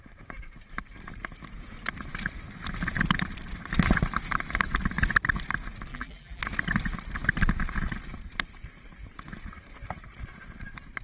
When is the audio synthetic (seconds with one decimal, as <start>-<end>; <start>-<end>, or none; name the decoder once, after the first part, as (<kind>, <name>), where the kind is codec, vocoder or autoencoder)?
5.9-6.4 (vocoder, BigVGAN v2)